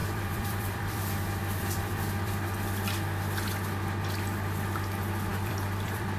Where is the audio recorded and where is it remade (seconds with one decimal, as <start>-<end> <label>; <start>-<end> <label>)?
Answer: 0.0-2.3 remade; 2.3-5.3 recorded; 5.3-6.2 remade